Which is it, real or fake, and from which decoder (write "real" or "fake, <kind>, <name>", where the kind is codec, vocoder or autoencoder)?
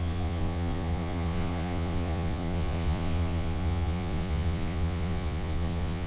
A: fake, vocoder, Vocos